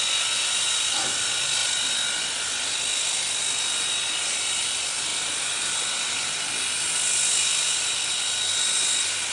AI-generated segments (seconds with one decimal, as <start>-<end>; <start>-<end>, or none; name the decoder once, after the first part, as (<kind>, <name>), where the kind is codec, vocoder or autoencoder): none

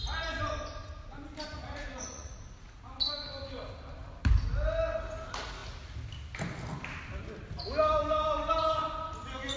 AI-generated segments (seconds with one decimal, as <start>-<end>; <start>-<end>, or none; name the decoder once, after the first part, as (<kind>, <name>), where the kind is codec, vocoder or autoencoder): 1.6-2.4 (vocoder, Vocos)

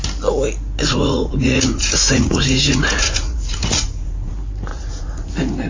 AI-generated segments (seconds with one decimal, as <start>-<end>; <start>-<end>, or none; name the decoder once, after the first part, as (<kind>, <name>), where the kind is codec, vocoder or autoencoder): 0.9-4.3 (vocoder, Vocos); 4.7-5.3

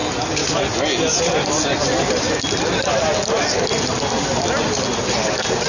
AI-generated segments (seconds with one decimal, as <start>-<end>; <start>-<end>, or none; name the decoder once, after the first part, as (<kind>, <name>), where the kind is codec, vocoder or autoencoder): none

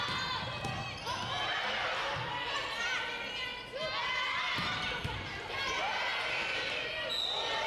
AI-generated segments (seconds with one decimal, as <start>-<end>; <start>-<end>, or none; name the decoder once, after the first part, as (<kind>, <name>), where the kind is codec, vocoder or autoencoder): none